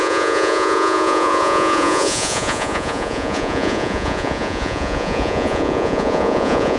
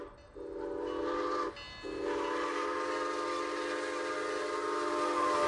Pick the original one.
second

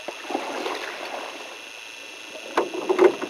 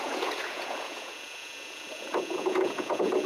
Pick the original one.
first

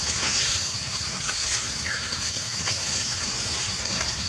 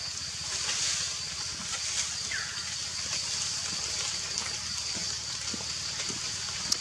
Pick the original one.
second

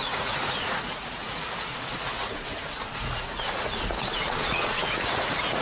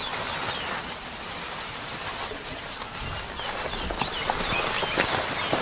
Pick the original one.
second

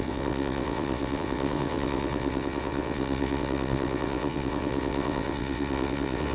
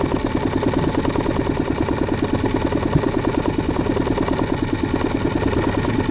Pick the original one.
second